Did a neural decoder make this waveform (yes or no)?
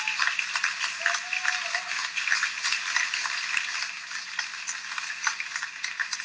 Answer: no